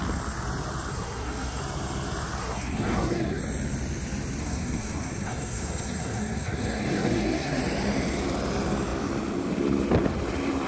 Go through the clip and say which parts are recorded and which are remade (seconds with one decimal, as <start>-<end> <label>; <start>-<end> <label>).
0.0-0.9 recorded; 0.9-1.6 remade; 1.6-2.4 recorded; 2.4-3.4 remade; 3.4-4.4 recorded; 4.4-7.6 remade; 7.6-10.7 recorded